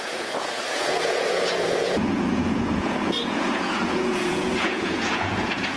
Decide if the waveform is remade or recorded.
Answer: remade